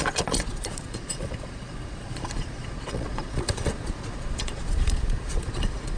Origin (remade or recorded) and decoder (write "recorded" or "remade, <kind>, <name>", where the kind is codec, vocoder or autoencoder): remade, vocoder, Vocos